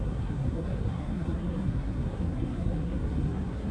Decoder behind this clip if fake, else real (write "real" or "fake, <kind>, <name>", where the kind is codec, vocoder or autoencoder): fake, codec, SNAC